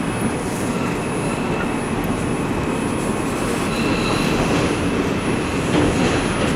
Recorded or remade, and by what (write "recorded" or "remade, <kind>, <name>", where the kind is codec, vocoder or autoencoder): recorded